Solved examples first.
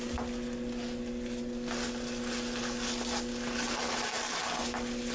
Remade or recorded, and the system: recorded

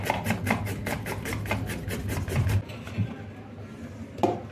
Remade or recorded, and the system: recorded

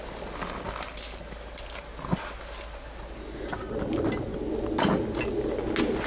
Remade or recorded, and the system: recorded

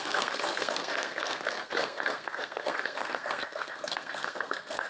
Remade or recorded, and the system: remade, codec, SNAC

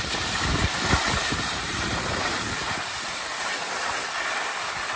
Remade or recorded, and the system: remade, vocoder, BigVGAN v2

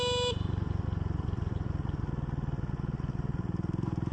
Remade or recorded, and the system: recorded